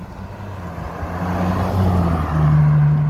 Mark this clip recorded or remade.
recorded